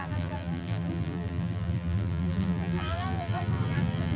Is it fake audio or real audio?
fake